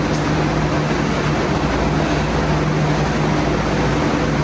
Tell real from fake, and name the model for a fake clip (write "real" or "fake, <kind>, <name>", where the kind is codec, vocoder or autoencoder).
real